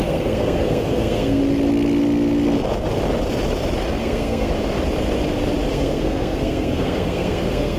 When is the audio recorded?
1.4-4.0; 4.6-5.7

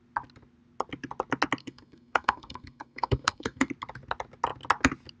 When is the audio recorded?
0.0-1.6; 3.7-5.2